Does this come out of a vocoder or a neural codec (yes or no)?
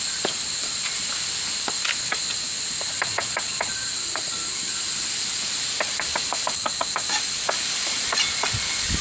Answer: no